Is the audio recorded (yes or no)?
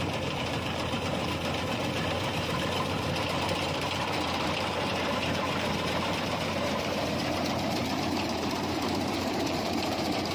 no